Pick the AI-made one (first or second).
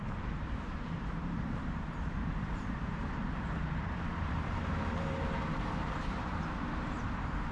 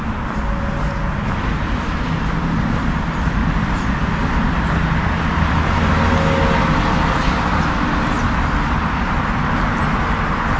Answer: first